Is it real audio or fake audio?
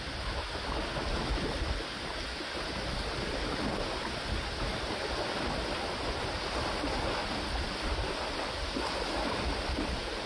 real